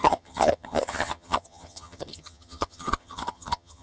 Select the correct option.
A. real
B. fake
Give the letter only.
B